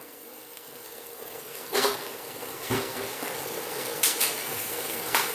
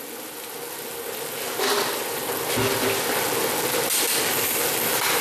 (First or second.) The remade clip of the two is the first